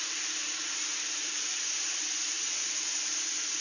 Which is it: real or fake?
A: fake